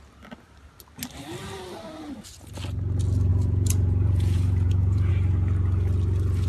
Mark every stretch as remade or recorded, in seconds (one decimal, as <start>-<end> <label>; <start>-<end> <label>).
0.0-3.3 recorded; 3.3-5.1 remade; 5.1-6.5 recorded